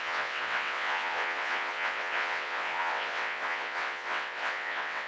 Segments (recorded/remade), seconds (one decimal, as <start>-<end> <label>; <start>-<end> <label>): 0.0-5.1 remade